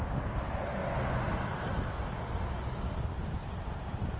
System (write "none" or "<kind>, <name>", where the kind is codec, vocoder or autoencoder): none